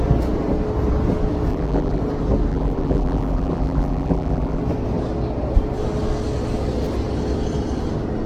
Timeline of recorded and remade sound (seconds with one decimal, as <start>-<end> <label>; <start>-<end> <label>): 0.0-1.5 recorded; 1.5-2.0 remade; 2.0-2.5 recorded; 2.5-4.6 remade; 4.6-8.3 recorded